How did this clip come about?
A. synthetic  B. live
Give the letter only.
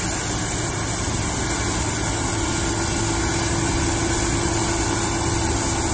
B